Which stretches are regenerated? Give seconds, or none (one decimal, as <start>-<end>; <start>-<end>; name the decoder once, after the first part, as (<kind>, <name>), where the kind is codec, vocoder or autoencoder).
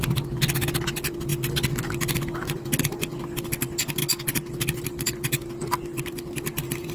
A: none